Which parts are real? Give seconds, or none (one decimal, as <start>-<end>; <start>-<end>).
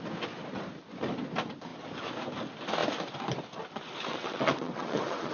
0.0-4.1